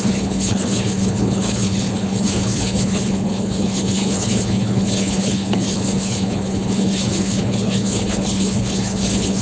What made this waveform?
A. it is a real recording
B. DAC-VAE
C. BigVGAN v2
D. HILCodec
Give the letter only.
D